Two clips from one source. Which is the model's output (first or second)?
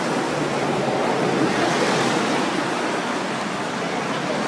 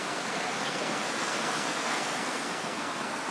second